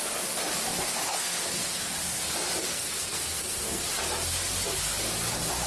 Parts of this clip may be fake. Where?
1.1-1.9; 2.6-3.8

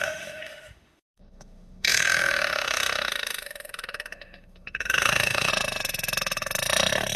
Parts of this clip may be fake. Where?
0.0-5.5

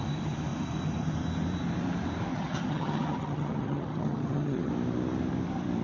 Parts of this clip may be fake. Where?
2.3-4.7

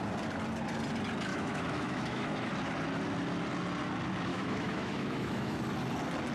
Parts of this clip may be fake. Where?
1.3-2.5; 4.3-5.6

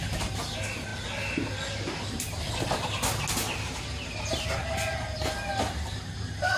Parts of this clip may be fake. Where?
none

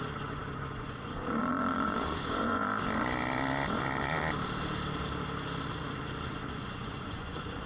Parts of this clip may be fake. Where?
0.0-2.7; 6.5-7.7

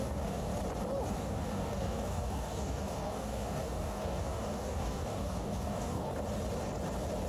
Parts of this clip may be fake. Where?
0.0-0.5; 1.1-6.1